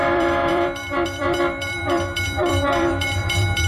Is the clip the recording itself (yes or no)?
no